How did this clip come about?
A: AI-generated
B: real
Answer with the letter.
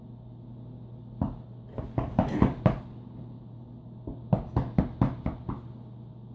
B